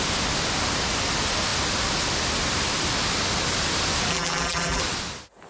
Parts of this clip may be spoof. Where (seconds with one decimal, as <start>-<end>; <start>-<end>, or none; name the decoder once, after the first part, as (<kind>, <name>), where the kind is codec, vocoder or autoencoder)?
4.1-4.8 (vocoder, BigVGAN v2)